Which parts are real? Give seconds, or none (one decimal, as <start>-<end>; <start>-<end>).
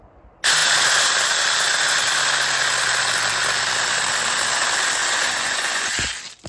0.0-5.0; 6.1-6.5